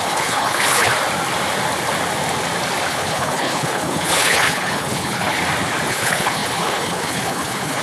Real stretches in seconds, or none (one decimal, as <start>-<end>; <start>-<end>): 0.9-2.9; 5.4-5.9